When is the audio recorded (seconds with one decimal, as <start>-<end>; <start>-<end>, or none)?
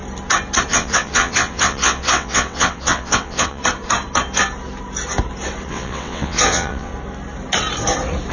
0.0-0.7; 3.6-5.6; 6.9-8.3